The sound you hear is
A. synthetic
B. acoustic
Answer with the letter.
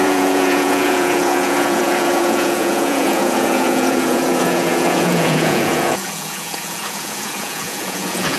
A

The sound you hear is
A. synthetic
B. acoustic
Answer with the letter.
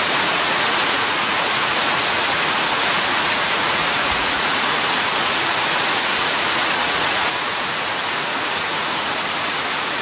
A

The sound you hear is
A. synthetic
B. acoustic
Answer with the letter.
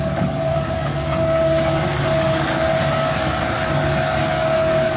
A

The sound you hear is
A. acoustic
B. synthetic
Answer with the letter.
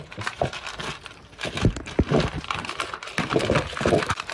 B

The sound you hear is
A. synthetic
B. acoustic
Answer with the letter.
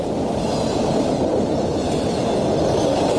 B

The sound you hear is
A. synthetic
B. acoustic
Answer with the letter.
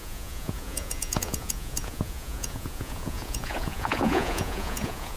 A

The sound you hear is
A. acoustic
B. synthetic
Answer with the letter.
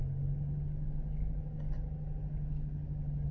A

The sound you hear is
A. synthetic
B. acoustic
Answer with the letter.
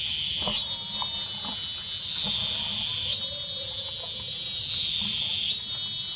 B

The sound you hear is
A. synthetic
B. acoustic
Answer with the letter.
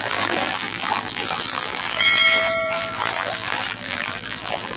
A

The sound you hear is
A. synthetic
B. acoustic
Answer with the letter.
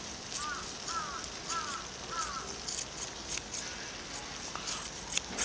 B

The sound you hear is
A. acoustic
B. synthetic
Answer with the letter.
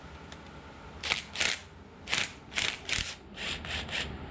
A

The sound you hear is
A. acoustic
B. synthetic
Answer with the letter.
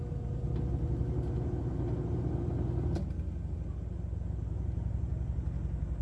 A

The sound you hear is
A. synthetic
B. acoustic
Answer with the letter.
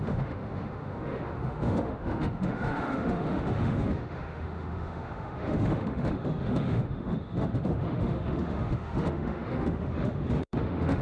A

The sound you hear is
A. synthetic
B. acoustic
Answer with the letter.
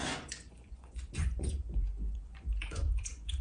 A